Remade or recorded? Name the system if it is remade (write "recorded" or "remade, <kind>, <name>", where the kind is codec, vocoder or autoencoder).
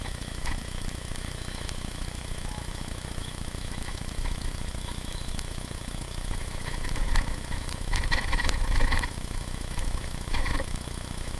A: remade, autoencoder, DAC-VAE